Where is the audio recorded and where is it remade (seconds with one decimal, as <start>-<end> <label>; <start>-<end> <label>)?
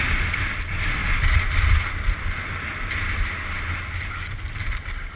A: 0.0-5.2 recorded